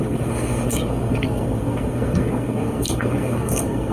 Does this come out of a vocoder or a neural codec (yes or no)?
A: yes